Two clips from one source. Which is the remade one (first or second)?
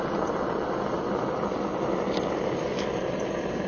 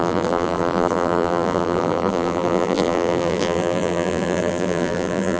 second